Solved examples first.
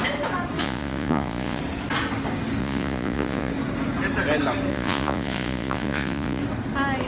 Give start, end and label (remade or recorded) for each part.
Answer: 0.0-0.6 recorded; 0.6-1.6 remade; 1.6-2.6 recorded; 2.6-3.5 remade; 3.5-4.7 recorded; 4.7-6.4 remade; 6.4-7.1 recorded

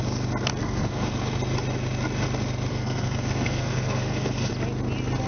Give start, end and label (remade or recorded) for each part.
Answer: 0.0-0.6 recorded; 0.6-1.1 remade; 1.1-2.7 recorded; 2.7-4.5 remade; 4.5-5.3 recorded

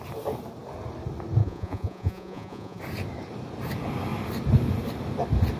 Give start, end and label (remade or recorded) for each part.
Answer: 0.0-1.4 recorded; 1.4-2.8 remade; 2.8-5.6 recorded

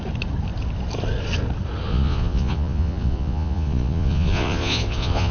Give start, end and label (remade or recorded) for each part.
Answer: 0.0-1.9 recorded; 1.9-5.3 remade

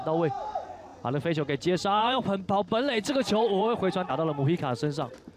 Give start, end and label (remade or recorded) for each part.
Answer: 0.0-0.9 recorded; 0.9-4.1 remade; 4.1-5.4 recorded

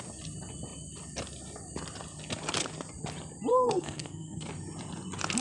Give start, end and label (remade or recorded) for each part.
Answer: 0.0-3.5 recorded; 3.5-4.5 remade; 4.5-5.4 recorded